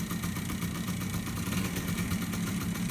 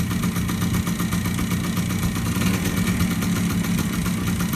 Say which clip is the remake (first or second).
first